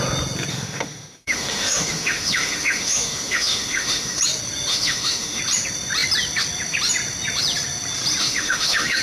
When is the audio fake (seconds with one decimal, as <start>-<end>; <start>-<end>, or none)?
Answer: 0.5-4.2; 4.7-5.4; 8.2-9.0